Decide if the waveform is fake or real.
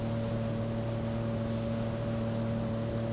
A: real